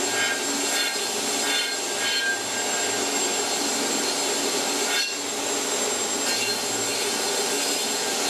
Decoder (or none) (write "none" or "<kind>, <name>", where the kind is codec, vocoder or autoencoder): none